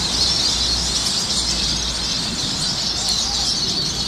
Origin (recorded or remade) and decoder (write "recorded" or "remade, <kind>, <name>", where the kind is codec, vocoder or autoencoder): recorded